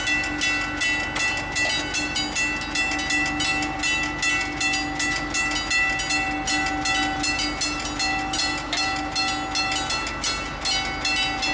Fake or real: real